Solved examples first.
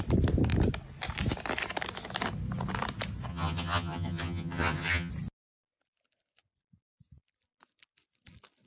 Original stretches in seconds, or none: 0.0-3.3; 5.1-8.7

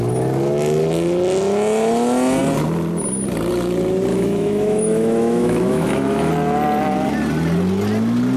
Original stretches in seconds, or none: 0.0-4.1; 6.3-8.4

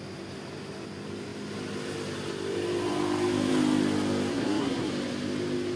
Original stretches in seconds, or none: 0.0-4.3; 4.9-5.8